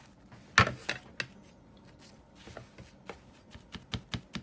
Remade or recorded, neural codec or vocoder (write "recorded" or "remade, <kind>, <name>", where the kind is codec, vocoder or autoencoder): recorded